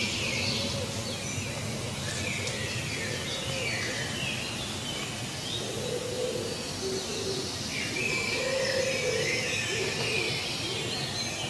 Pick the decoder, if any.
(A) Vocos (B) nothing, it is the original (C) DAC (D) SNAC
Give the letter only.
B